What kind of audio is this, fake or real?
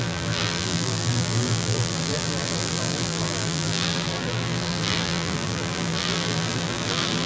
fake